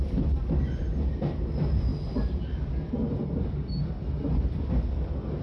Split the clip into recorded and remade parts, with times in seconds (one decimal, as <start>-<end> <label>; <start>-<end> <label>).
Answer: 0.0-5.4 recorded